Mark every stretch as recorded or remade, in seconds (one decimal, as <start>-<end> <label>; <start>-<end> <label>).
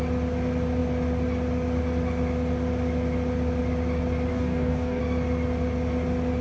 0.0-4.3 recorded; 4.3-5.0 remade; 5.0-6.4 recorded